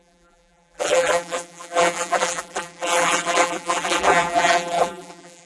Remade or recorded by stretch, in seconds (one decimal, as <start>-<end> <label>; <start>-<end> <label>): 0.0-5.5 remade